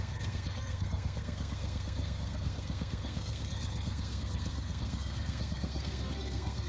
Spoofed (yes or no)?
yes